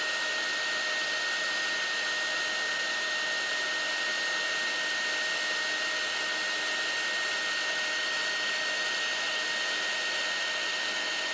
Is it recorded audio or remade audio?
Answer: recorded